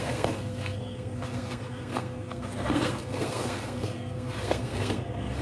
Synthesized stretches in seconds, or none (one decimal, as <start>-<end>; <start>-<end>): 0.0-5.4